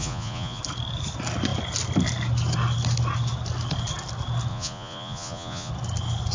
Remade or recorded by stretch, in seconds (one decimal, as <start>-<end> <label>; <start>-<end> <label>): 0.0-0.6 remade; 0.6-4.5 recorded; 4.5-5.7 remade; 5.7-6.3 recorded